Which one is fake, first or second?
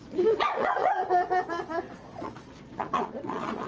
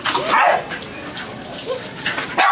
first